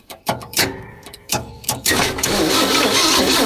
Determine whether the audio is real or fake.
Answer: fake